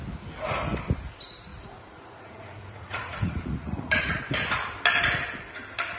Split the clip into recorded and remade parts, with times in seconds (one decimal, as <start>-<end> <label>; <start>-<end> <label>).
0.0-1.5 recorded; 1.5-4.2 remade; 4.2-6.0 recorded